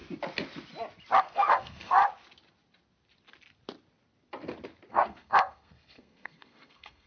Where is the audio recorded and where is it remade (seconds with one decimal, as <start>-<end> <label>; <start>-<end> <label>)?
0.0-1.2 recorded; 1.2-2.0 remade; 2.0-4.9 recorded; 4.9-7.1 remade